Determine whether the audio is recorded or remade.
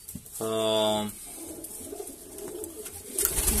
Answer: recorded